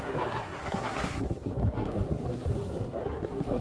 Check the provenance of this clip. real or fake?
fake